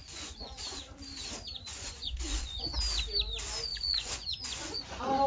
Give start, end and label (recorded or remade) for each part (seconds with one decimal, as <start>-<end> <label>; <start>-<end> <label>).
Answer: 0.0-0.8 remade; 0.8-1.5 recorded; 1.5-2.8 remade; 2.8-3.7 recorded; 3.7-5.3 remade